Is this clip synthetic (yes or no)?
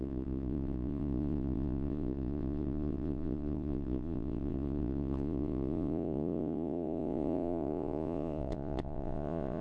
yes